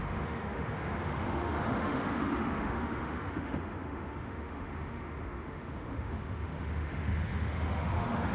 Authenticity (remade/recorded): remade